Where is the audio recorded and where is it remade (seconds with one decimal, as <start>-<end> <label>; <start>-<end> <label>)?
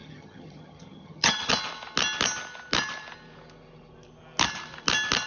0.0-1.5 remade; 1.5-5.3 recorded